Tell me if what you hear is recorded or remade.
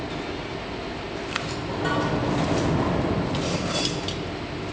recorded